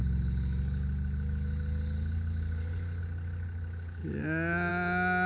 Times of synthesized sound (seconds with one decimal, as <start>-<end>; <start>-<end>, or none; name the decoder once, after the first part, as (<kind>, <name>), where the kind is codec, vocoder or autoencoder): none